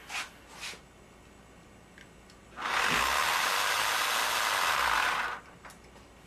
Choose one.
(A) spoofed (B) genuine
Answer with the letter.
B